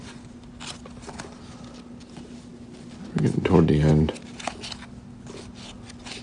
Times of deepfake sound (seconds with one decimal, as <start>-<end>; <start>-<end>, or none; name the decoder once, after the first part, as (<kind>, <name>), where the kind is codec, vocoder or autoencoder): none